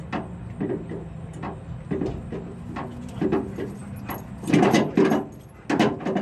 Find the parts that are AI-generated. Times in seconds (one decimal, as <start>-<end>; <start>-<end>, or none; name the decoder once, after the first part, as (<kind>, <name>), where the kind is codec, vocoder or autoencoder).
none